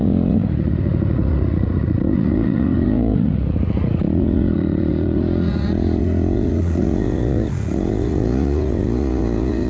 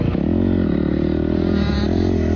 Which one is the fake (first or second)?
first